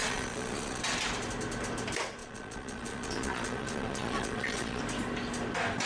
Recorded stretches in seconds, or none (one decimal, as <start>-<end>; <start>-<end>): 0.8-2.2; 4.8-5.9